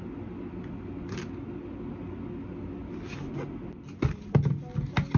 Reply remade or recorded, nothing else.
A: recorded